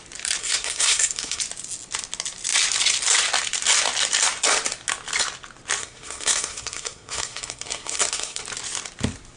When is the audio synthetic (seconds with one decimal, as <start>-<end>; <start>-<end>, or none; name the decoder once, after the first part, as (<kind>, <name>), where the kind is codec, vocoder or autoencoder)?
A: 0.4-1.4 (codec, SNAC); 5.8-8.4